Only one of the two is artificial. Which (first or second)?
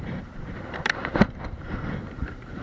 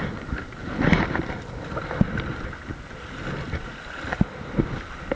first